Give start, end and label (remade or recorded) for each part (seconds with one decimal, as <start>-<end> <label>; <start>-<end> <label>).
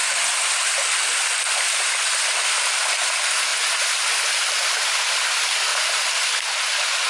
0.0-2.4 remade; 2.4-5.7 recorded; 5.7-6.3 remade; 6.3-7.1 recorded